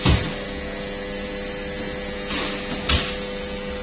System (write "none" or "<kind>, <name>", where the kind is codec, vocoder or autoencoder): none